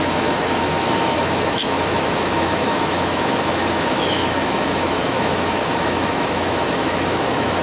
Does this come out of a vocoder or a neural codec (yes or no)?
yes